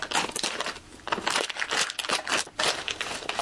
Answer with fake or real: fake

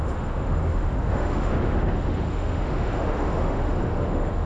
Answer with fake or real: fake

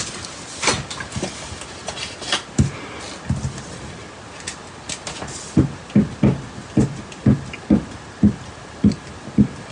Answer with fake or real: real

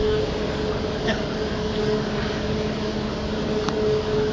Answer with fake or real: fake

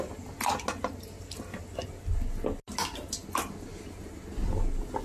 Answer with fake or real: real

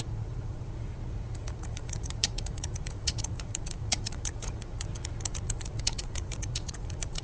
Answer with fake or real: fake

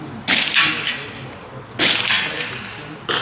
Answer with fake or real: real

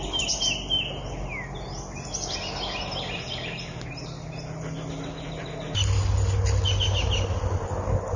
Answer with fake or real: real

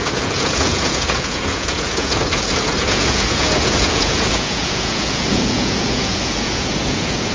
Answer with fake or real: fake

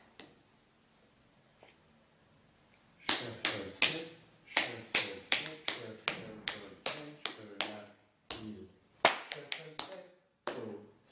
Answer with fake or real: real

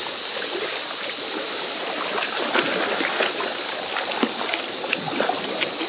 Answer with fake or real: real